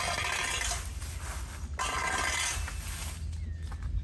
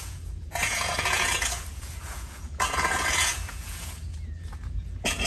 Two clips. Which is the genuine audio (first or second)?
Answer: first